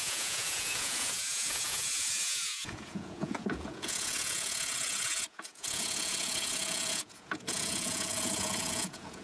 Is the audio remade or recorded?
remade